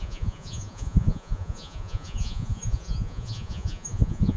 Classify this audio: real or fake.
fake